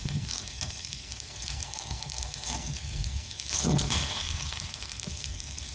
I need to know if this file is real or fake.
fake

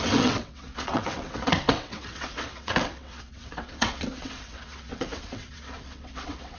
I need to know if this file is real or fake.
fake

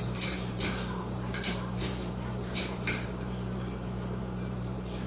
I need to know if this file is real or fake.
fake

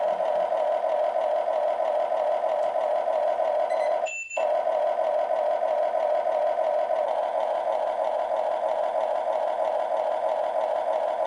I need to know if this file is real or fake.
real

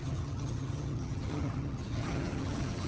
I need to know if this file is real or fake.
fake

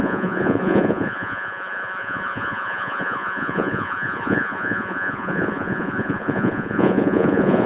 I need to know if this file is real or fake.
fake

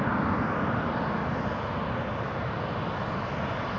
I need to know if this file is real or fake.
real